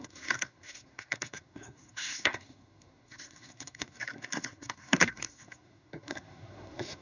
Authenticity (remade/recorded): remade